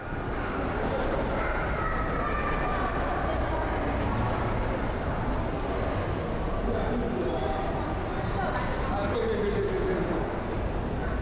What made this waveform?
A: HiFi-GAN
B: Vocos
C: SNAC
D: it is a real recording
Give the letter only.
D